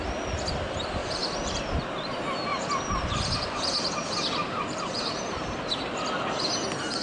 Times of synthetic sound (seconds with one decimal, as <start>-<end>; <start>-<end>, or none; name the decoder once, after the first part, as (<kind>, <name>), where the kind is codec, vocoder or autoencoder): 1.0-1.8 (vocoder, BigVGAN v2); 2.5-3.5; 4.4-5.6